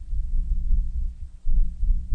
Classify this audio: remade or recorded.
recorded